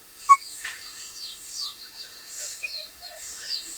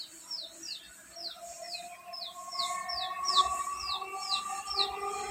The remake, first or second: first